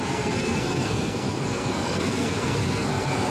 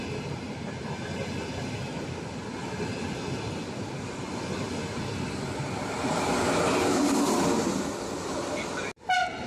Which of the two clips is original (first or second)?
second